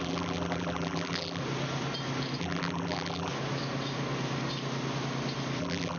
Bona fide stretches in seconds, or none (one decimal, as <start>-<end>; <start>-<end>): 1.4-2.4; 3.3-5.6